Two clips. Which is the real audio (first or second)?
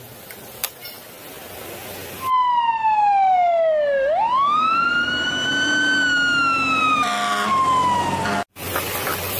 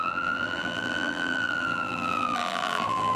first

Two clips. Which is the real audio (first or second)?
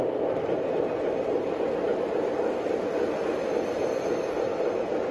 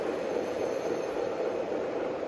first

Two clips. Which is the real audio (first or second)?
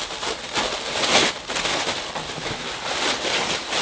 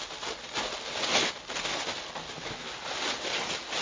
second